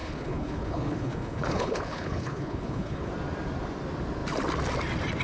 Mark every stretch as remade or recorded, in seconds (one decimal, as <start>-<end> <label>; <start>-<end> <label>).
0.0-3.1 remade; 3.1-5.2 recorded